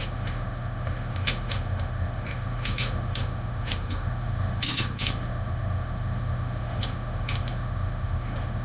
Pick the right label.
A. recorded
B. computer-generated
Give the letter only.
B